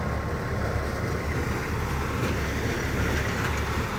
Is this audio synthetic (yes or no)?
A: no